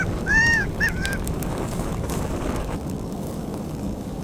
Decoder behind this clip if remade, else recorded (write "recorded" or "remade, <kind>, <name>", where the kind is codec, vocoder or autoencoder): remade, codec, DAC